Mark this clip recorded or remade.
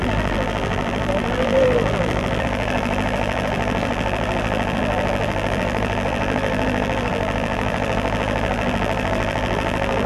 remade